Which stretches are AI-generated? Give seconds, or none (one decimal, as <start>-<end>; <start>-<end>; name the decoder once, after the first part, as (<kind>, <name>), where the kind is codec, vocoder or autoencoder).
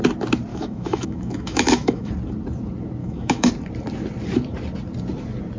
0.5-2.1 (autoencoder, DAC-VAE); 3.0-3.5